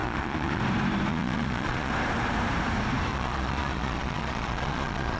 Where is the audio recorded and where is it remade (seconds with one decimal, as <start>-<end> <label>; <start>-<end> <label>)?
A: 0.0-0.6 remade; 0.6-1.1 recorded; 1.1-1.9 remade; 1.9-3.1 recorded; 3.1-5.2 remade